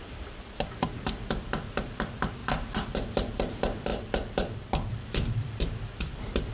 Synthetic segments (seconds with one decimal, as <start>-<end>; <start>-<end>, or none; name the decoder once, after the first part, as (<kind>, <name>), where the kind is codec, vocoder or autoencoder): 0.0-2.4 (vocoder, BigVGAN v2); 2.9-6.5

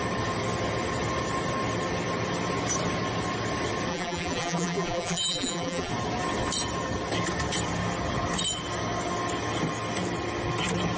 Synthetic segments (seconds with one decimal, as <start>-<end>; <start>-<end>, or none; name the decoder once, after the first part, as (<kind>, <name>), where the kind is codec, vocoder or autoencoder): 3.9-5.9 (vocoder, BigVGAN v2)

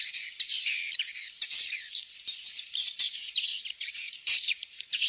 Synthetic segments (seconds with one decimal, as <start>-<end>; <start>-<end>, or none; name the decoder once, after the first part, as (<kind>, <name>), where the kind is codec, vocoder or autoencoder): 0.0-5.1 (vocoder, BigVGAN v2)

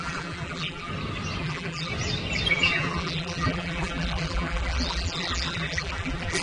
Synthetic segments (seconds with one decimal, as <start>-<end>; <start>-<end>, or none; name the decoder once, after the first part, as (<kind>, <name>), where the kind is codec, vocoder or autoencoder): 0.0-0.9 (vocoder, BigVGAN v2); 1.4-1.9; 2.5-6.4

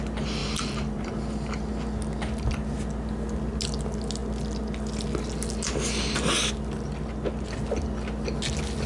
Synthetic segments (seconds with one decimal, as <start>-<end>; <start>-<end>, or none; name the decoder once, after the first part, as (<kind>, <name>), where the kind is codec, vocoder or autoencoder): 0.4-1.2 (vocoder, BigVGAN v2)

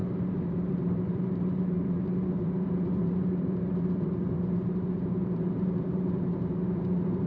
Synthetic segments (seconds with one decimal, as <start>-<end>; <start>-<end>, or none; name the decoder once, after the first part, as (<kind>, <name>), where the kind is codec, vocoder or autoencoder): 0.0-7.3 (vocoder, BigVGAN v2)

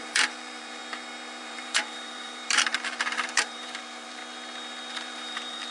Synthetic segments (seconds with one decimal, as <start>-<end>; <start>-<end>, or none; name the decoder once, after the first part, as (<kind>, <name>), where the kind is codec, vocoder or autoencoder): 0.0-0.8 (vocoder, BigVGAN v2); 1.4-4.2; 4.9-5.7